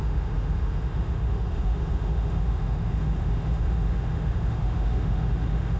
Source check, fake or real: fake